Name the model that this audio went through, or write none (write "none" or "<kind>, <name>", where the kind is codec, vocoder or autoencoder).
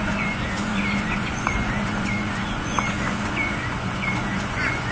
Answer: vocoder, Vocos